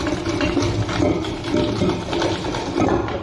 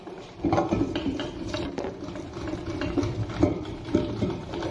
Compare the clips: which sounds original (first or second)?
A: first